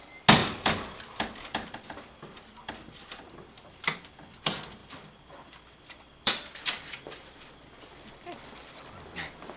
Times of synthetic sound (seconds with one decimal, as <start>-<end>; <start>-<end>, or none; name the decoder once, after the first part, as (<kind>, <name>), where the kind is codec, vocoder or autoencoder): 0.4-3.3 (vocoder, BigVGAN v2); 4.8-7.5

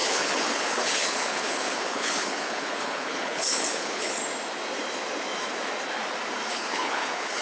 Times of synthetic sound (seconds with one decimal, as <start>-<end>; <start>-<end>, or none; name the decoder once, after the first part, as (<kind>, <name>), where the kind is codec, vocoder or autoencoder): 0.0-4.2 (codec, HILCodec); 6.5-7.4

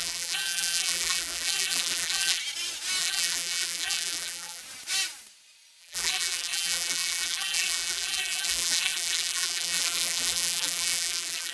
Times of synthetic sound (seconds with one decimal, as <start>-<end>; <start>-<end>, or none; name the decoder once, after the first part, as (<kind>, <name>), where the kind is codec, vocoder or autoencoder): 0.0-2.4 (vocoder, BigVGAN v2); 3.0-4.6; 5.8-11.5